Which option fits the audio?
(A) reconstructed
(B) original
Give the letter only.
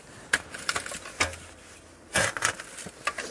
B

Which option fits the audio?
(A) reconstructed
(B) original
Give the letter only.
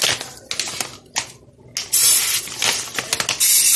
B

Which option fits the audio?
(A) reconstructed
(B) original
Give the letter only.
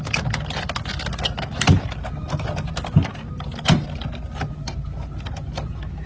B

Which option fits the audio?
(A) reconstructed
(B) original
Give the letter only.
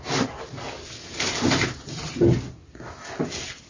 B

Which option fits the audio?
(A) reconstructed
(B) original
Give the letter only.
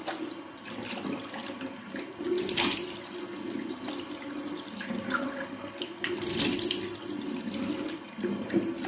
B